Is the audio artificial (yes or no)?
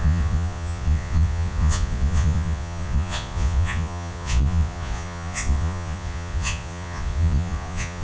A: yes